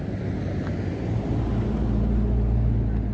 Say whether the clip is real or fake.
real